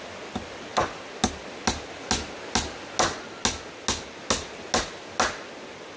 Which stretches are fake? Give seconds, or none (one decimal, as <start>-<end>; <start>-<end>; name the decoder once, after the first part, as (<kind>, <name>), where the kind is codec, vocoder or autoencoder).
none